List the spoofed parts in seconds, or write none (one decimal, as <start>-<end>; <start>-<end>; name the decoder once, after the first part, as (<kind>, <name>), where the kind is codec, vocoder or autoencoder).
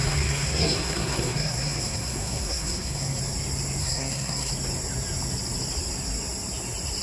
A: 0.0-3.2 (codec, SNAC); 3.8-4.5